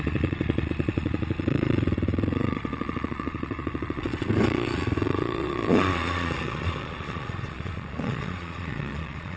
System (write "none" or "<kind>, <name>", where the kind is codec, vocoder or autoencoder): vocoder, Vocos